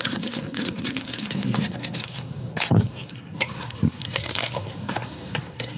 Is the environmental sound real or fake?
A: fake